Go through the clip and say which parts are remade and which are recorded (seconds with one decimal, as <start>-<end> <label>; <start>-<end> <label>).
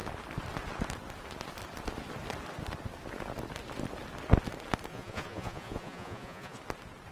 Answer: 0.0-4.9 recorded; 4.9-6.6 remade; 6.6-7.1 recorded